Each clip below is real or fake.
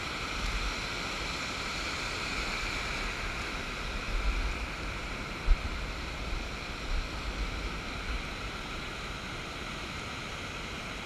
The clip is real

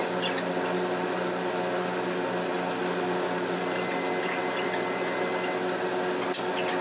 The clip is real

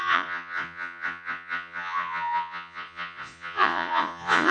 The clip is fake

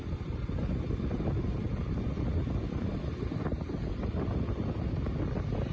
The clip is real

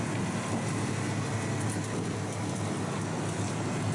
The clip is real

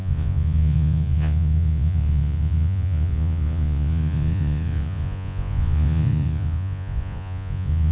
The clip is fake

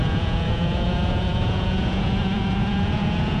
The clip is fake